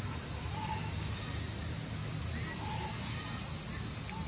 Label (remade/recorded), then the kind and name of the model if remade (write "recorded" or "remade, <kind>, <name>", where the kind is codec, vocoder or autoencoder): recorded